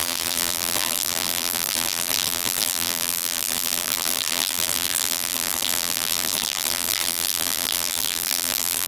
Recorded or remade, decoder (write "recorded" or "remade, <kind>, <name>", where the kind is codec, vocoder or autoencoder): remade, vocoder, BigVGAN v2